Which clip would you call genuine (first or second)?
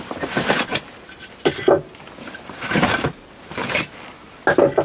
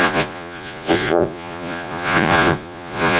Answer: first